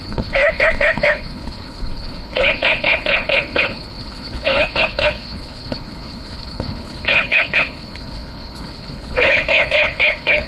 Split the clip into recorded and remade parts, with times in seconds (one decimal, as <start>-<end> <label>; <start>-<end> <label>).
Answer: 0.0-10.5 remade